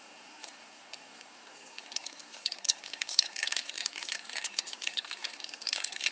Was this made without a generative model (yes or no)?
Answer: no